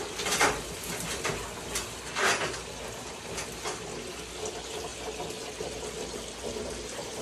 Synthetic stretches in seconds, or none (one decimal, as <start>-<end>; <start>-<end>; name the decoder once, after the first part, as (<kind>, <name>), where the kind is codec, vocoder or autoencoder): none